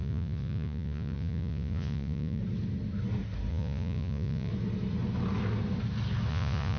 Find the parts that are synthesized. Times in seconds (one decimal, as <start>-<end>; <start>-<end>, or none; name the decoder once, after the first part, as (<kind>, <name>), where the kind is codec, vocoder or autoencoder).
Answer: 0.0-2.4 (vocoder, Vocos); 3.5-4.5; 6.3-6.8